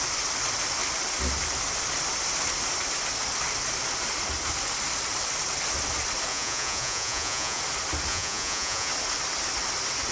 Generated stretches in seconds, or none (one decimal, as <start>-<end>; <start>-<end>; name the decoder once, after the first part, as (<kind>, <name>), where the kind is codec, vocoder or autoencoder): 6.3-7.6 (vocoder, Vocos); 8.1-8.9